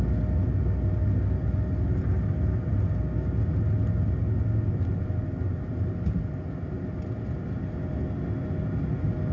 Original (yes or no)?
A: yes